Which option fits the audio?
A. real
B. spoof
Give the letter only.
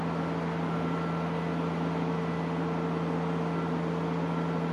A